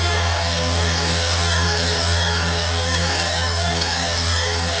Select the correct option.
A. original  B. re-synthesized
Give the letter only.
B